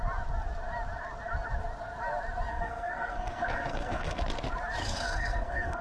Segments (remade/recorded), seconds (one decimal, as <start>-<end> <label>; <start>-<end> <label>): 0.0-2.5 recorded; 2.5-4.2 remade; 4.2-4.8 recorded; 4.8-5.8 remade